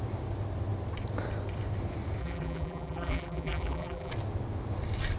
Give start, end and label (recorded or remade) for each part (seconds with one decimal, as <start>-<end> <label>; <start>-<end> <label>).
0.0-2.2 recorded; 2.2-4.1 remade; 4.1-5.2 recorded